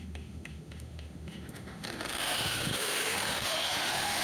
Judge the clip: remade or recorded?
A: remade